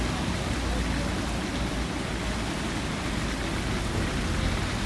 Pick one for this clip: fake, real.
real